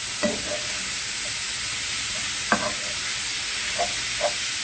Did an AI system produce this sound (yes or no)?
no